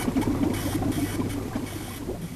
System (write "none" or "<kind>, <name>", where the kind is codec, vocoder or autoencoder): vocoder, BigVGAN v2